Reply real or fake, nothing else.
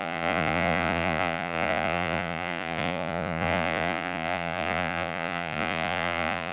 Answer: fake